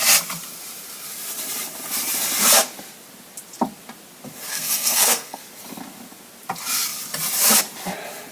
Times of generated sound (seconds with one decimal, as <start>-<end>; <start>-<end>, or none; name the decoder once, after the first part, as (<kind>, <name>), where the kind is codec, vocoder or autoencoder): 4.5-5.4 (codec, SNAC)